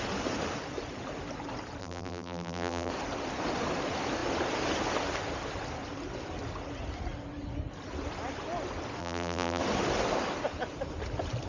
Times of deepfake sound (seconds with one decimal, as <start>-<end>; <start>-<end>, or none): 1.8-2.9; 9.0-9.6